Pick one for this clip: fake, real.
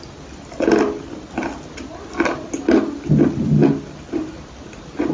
real